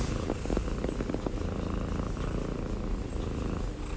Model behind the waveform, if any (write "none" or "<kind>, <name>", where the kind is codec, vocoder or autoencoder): none